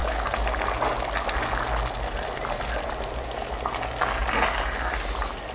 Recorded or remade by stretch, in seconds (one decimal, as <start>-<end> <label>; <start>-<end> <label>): 0.0-5.5 recorded